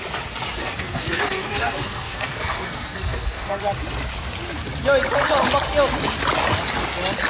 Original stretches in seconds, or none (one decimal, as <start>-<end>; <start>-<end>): 0.0-0.6; 3.6-7.3